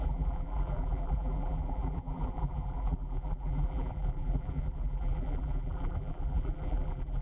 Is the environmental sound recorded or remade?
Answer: remade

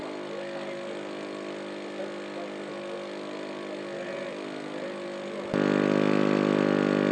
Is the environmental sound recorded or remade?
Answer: recorded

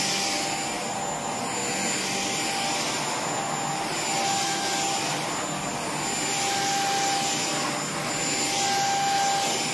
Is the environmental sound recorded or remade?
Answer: recorded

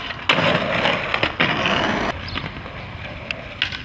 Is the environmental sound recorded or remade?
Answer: recorded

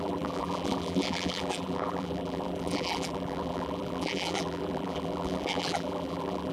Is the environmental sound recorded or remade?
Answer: remade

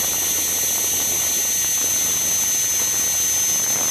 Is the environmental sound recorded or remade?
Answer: recorded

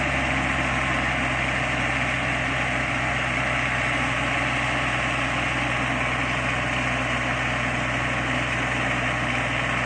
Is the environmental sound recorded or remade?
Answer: recorded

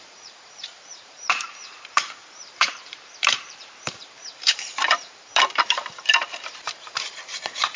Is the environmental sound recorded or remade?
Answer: remade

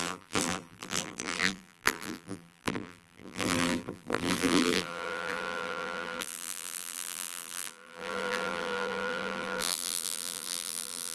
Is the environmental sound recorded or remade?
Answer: remade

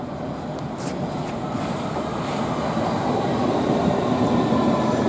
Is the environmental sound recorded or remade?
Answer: recorded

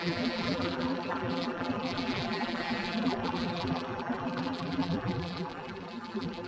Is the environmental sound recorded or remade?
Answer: remade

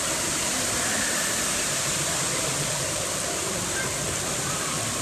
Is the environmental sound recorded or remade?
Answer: remade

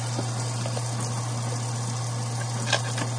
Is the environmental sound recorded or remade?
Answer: recorded